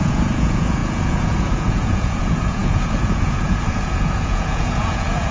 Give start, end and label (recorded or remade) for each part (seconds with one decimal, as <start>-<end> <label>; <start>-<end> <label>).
0.0-5.3 remade